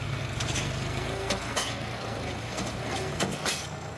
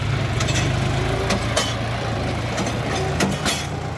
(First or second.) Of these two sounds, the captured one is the second